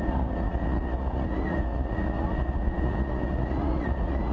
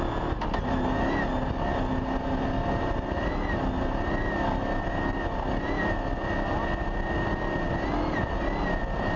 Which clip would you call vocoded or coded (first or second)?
first